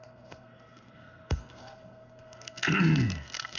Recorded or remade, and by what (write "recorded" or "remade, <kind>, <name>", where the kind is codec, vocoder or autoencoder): remade, codec, SNAC